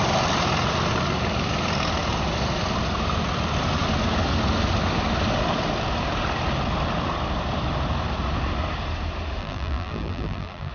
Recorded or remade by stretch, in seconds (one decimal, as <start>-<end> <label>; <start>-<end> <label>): 0.0-9.4 recorded; 9.4-10.7 remade